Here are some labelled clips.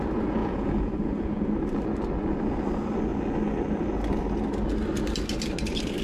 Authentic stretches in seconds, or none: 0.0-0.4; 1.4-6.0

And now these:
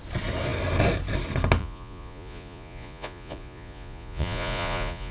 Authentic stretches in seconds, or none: 0.0-1.6

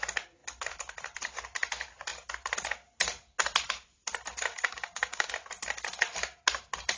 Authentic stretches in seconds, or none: 0.0-4.5; 5.3-7.0

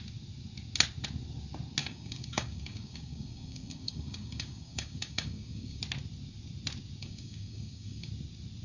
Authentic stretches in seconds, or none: 0.0-1.8; 5.8-7.0; 8.1-8.6

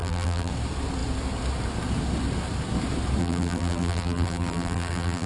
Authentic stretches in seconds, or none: 0.5-3.2